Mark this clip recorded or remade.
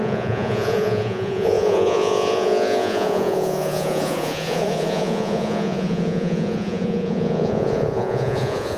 remade